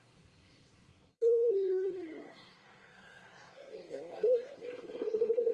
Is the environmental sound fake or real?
fake